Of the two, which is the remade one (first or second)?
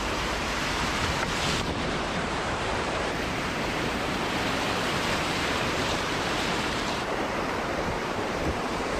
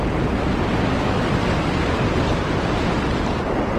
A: first